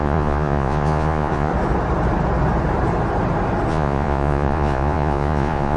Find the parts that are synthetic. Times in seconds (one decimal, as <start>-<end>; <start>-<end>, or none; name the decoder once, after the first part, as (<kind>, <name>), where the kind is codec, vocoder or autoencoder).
0.0-1.5 (vocoder, Vocos); 3.7-5.8